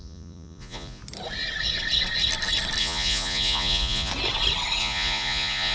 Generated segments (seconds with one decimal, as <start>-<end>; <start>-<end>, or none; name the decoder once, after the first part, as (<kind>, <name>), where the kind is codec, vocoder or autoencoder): 0.0-1.0 (vocoder, Vocos); 2.8-4.1; 4.8-5.7